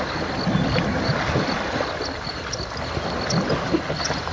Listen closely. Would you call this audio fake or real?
real